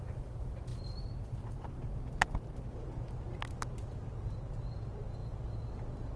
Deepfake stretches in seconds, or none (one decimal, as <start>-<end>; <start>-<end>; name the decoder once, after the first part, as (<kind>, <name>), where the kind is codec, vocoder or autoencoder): none